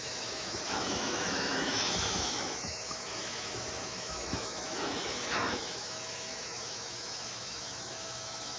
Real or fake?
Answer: fake